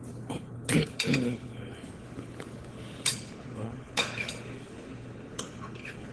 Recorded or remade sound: remade